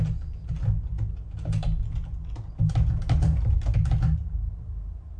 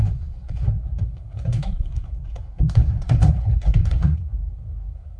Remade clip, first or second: second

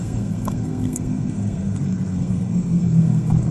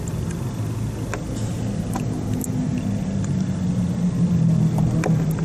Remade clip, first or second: first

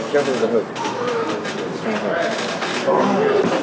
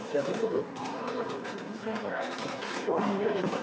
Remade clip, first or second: second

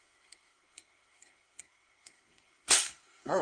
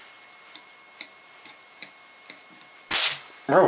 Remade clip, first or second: first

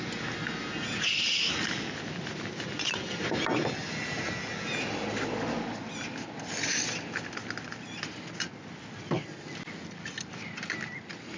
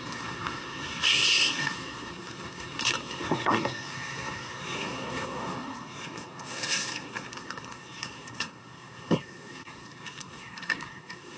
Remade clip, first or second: second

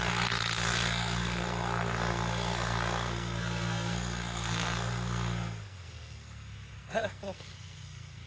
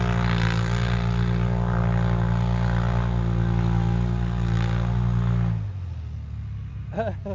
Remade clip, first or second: first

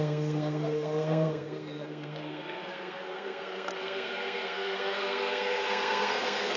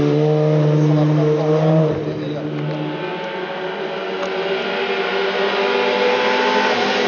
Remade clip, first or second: first